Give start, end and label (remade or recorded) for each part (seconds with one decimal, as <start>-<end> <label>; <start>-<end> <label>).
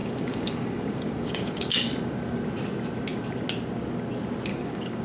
0.0-1.9 remade; 1.9-4.5 recorded; 4.5-5.0 remade